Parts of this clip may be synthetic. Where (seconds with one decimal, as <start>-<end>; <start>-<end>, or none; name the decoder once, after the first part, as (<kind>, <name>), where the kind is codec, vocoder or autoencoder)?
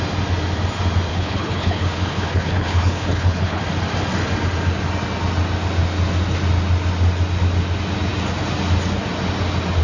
1.1-3.6 (codec, HILCodec)